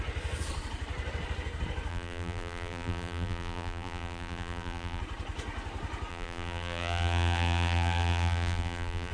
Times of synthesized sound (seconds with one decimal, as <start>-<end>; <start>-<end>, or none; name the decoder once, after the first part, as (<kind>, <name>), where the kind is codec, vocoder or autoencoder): 1.9-5.0 (vocoder, BigVGAN v2); 6.1-9.1